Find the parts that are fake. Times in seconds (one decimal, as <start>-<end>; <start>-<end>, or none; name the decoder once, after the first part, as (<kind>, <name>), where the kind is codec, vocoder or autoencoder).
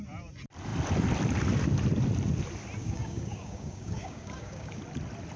2.8-4.8 (codec, DAC)